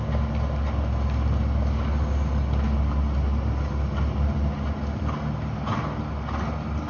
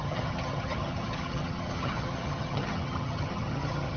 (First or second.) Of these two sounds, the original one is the first